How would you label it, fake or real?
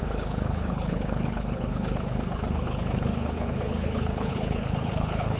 fake